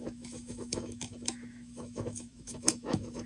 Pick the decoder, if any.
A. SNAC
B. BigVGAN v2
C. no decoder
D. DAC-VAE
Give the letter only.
D